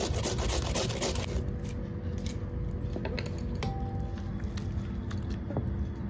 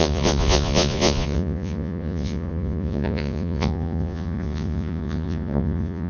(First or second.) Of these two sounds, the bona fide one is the first